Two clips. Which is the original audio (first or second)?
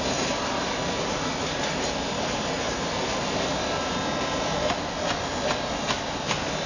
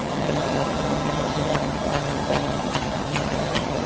first